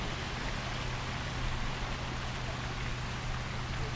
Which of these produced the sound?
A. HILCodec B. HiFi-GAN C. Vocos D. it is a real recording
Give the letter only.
D